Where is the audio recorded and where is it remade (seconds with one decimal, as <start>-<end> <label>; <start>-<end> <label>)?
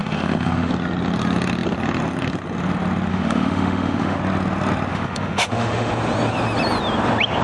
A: 0.0-0.7 remade; 0.7-3.1 recorded; 3.1-4.2 remade; 4.2-4.9 recorded; 4.9-5.9 remade; 5.9-7.4 recorded